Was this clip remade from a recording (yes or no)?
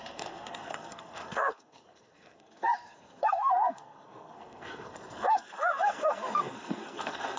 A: yes